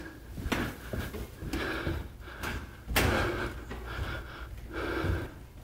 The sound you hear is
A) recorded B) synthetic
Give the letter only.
A